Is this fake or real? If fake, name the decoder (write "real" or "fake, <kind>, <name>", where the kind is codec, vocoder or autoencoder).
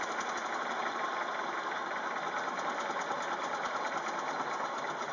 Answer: real